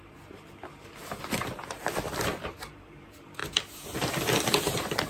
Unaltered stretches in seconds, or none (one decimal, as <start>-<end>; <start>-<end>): 0.6-2.7; 3.4-4.4